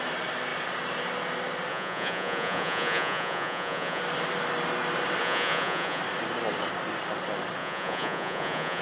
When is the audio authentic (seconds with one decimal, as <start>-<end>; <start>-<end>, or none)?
0.0-1.7; 4.0-5.2; 6.0-7.6